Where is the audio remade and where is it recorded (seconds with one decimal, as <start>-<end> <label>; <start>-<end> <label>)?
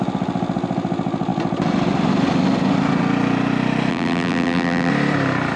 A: 0.0-3.9 recorded; 3.9-4.9 remade; 4.9-5.6 recorded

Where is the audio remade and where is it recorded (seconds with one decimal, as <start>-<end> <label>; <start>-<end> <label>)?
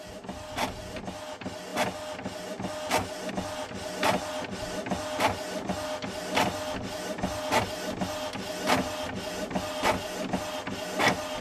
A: 0.0-11.4 recorded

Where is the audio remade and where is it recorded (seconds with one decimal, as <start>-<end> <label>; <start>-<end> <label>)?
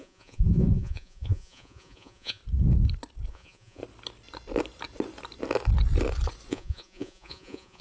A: 0.0-2.4 remade; 2.4-3.3 recorded; 3.3-3.8 remade; 3.8-6.5 recorded; 6.5-7.8 remade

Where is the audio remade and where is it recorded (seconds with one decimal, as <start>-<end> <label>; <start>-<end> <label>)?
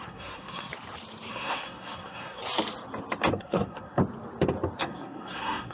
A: 0.0-0.7 remade; 0.7-1.3 recorded; 1.3-2.4 remade; 2.4-3.3 recorded; 3.3-4.0 remade; 4.0-4.8 recorded; 4.8-5.7 remade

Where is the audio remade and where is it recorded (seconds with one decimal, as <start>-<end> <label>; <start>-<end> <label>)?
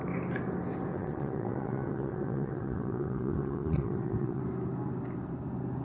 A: 0.0-0.9 recorded; 0.9-4.4 remade; 4.4-5.8 recorded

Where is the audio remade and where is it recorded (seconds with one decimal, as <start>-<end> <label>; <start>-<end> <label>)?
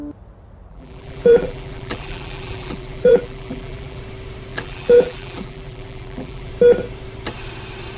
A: 0.0-0.7 recorded; 0.7-4.0 remade; 4.0-4.5 recorded; 4.5-6.5 remade; 6.5-8.0 recorded